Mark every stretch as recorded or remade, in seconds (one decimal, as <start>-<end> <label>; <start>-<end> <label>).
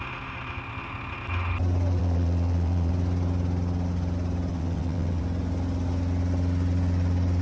0.0-2.0 recorded; 2.0-2.9 remade; 2.9-4.5 recorded; 4.5-5.2 remade; 5.2-7.4 recorded